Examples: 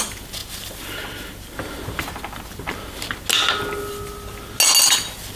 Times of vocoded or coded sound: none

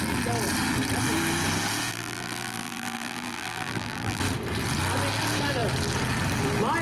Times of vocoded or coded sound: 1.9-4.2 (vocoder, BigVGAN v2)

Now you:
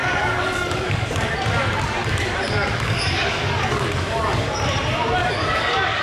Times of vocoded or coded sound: 0.0-1.1 (codec, DAC); 2.0-4.5; 5.2-6.0

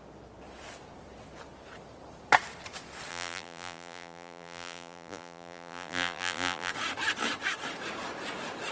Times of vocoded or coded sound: 3.1-6.7 (vocoder, BigVGAN v2)

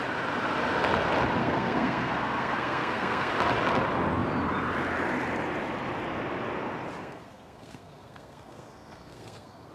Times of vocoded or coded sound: 1.4-3.3 (codec, SNAC); 7.0-9.7

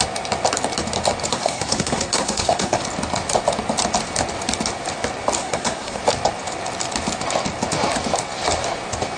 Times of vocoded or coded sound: 1.3-2.8 (codec, SNAC); 5.4-6.0